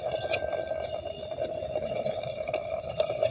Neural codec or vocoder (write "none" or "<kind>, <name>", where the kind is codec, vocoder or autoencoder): none